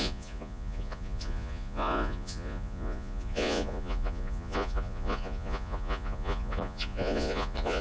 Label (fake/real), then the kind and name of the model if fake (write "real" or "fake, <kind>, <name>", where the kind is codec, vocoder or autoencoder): fake, vocoder, Vocos